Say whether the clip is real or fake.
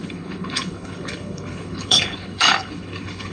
fake